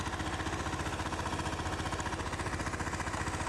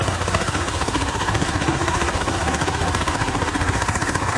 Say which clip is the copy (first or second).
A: second